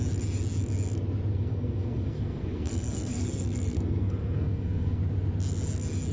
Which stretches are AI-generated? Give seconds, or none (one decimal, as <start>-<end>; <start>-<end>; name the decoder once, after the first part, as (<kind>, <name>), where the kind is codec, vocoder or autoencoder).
1.3-5.0 (codec, SNAC)